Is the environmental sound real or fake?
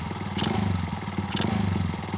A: real